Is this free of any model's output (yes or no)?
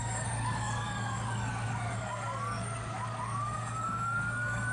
no